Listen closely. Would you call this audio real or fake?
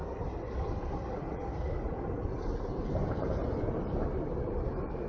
real